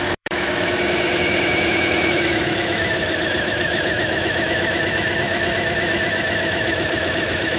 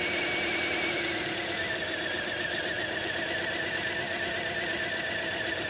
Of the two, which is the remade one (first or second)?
first